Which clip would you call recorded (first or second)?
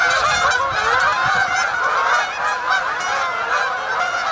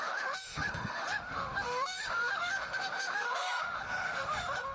first